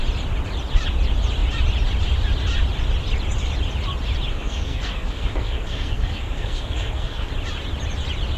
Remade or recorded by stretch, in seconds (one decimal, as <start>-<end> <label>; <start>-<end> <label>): 0.0-4.3 recorded; 4.3-7.3 remade; 7.3-8.4 recorded